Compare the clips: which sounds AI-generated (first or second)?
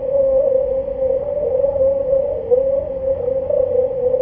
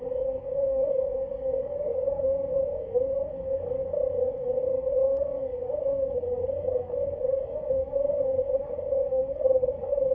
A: second